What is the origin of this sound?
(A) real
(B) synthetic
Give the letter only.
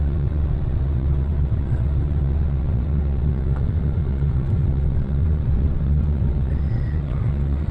B